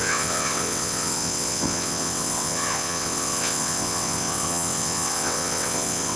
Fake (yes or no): yes